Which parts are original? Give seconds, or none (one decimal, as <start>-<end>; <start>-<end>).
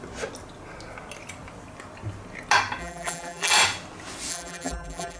0.0-2.8; 3.5-4.3